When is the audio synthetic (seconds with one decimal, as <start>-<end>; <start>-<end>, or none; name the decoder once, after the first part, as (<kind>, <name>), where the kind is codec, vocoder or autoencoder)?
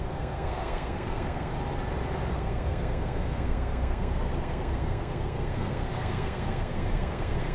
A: 0.0-1.5 (codec, SNAC); 2.3-7.5